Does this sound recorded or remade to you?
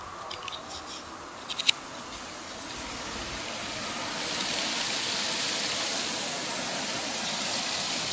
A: recorded